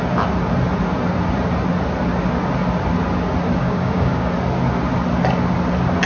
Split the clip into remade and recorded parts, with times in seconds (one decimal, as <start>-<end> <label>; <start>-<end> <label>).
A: 0.0-3.6 recorded; 3.6-4.3 remade; 4.3-6.1 recorded